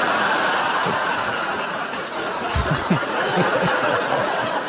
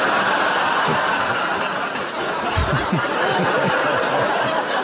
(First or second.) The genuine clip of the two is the second